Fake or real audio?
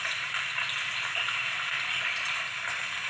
real